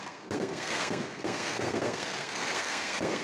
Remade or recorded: remade